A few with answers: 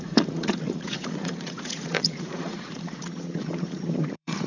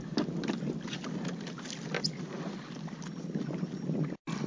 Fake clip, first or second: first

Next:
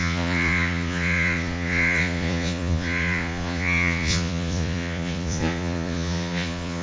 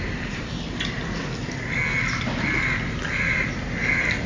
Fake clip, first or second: first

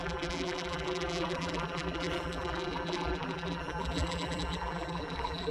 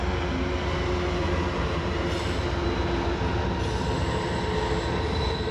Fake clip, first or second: first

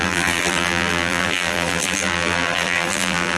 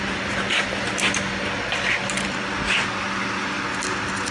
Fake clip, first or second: first